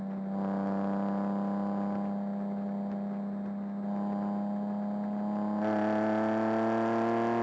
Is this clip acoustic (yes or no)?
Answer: yes